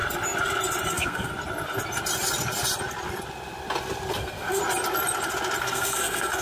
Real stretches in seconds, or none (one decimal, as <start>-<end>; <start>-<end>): 0.0-0.9; 1.3-4.1; 4.6-5.6